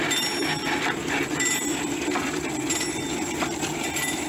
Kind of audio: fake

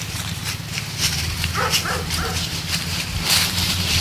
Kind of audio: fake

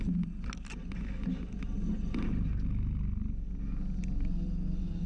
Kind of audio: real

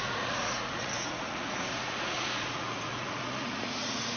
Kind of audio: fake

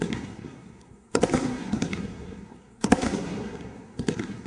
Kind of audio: fake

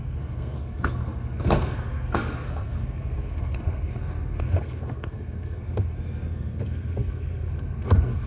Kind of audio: fake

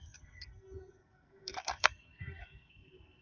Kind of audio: fake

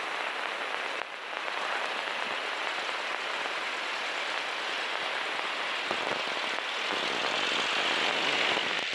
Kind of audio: real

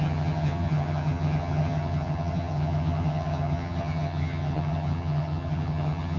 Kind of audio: fake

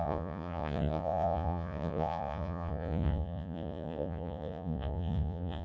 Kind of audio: fake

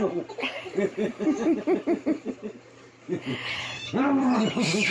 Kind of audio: fake